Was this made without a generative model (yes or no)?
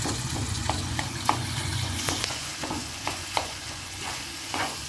no